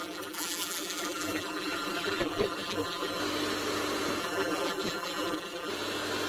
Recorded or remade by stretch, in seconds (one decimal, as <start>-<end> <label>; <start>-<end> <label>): 0.0-3.2 remade; 3.2-4.2 recorded; 4.2-5.7 remade; 5.7-6.3 recorded